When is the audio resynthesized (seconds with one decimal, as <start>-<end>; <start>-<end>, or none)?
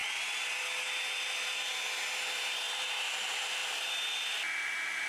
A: none